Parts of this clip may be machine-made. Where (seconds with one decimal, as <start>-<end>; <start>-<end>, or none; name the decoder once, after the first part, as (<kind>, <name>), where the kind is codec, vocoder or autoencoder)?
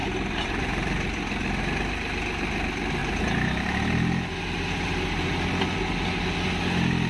0.0-1.6 (vocoder, BigVGAN v2); 3.0-4.4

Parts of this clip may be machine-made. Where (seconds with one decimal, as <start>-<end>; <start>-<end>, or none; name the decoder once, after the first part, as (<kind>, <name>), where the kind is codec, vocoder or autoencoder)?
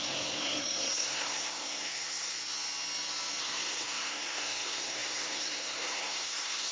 0.0-2.4 (codec, SNAC); 3.4-6.7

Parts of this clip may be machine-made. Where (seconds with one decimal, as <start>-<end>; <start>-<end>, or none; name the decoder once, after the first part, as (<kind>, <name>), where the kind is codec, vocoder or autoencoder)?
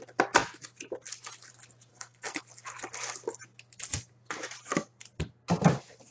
1.9-2.4 (codec, SNAC)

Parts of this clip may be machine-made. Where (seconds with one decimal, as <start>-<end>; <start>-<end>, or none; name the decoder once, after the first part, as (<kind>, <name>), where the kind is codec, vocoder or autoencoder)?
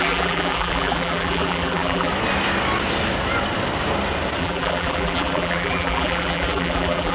0.0-2.1 (vocoder, BigVGAN v2); 4.4-7.1